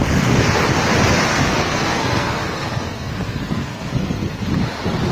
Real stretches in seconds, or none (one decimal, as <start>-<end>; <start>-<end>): 0.0-1.3; 4.4-5.1